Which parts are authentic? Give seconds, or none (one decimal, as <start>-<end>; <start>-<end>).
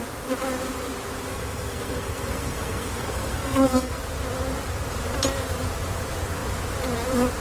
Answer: 0.0-1.3; 4.0-7.4